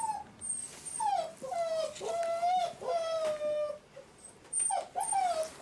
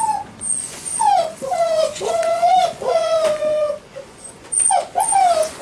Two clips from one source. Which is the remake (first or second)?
second